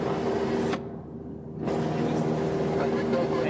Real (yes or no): yes